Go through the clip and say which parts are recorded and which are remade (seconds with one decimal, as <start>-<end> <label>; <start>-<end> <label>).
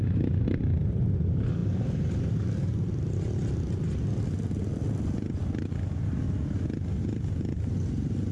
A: 0.0-8.3 recorded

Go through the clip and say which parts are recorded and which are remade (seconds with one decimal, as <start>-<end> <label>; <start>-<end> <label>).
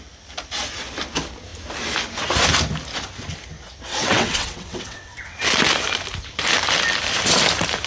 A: 0.0-3.9 recorded; 3.9-5.4 remade; 5.4-7.9 recorded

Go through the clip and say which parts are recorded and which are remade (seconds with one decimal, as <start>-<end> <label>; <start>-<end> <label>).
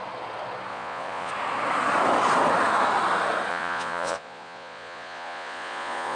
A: 0.0-0.7 recorded; 0.7-1.3 remade; 1.3-3.5 recorded; 3.5-6.2 remade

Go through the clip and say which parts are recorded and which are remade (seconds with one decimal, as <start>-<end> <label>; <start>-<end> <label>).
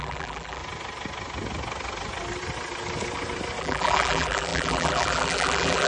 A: 0.0-0.6 remade; 0.6-3.6 recorded; 3.6-5.9 remade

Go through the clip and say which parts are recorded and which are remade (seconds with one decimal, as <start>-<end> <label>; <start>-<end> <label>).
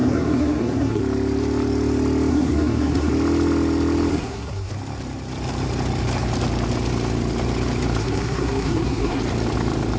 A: 0.0-1.0 remade; 1.0-2.3 recorded; 2.3-3.1 remade; 3.1-4.1 recorded; 4.1-4.7 remade; 4.7-8.0 recorded; 8.0-9.2 remade; 9.2-10.0 recorded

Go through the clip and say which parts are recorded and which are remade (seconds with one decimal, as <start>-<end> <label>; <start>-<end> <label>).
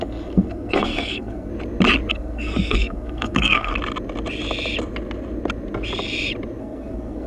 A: 0.0-1.5 remade; 1.5-2.1 recorded; 2.1-3.7 remade; 3.7-6.6 recorded; 6.6-7.3 remade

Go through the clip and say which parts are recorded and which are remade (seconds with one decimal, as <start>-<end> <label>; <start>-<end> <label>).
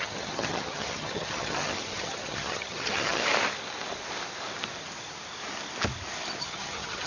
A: 0.0-3.2 remade; 3.2-6.4 recorded; 6.4-7.1 remade